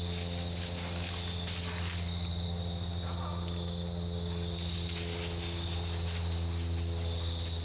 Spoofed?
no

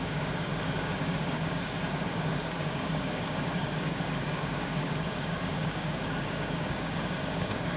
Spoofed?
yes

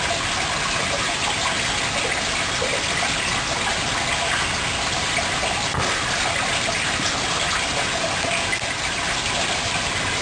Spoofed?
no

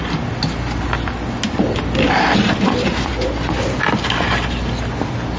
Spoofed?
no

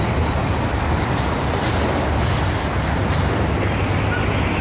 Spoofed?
no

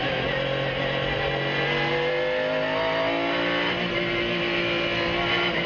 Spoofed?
no